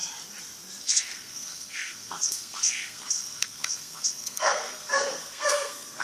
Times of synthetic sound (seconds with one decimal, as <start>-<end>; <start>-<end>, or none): 0.8-6.0